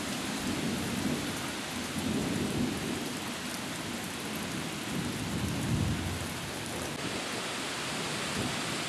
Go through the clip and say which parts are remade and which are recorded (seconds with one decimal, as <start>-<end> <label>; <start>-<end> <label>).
0.0-8.9 recorded